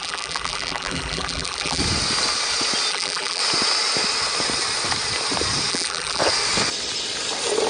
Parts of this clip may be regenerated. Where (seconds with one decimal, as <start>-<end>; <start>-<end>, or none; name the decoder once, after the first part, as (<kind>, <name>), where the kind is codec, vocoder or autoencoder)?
0.0-1.8 (vocoder, BigVGAN v2); 2.9-3.4; 5.7-6.2